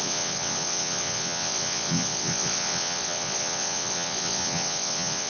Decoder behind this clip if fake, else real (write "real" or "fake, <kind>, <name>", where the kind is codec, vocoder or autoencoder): fake, vocoder, WaveNeXt